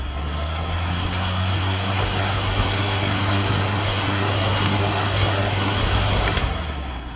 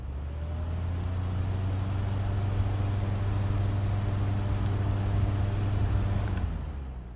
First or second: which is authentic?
second